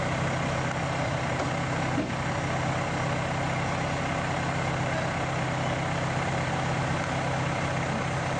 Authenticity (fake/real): real